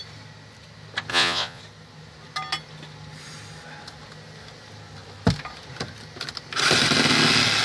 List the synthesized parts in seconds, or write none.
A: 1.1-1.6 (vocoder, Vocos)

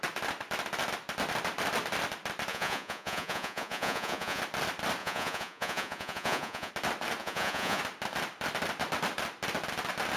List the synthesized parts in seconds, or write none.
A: 2.5-4.4 (vocoder, Vocos); 5.0-6.7; 7.2-7.8

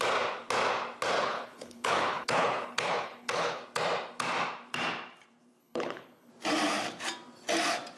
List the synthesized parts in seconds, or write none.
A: 1.2-3.6 (codec, HILCodec); 5.6-6.3

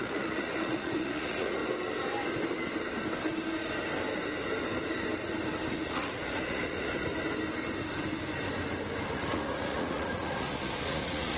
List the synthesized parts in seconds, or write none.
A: 0.0-1.6 (vocoder, Vocos); 5.7-7.1; 9.1-11.4